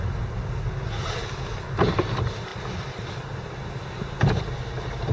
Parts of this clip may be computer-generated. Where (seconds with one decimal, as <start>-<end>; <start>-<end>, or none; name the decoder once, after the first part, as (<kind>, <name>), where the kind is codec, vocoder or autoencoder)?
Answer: none